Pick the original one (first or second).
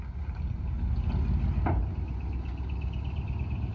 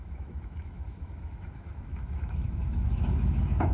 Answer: first